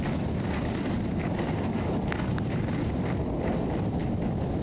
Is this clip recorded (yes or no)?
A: yes